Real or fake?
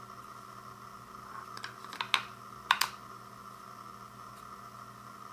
real